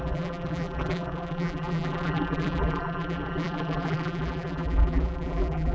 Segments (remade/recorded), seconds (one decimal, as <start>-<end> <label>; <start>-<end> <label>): 0.0-5.7 remade